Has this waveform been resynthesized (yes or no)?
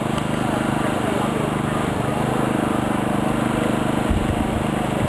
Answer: no